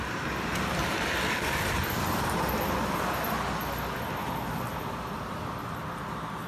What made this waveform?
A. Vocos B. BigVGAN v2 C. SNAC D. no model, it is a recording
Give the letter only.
D